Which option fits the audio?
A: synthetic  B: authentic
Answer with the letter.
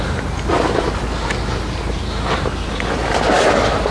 B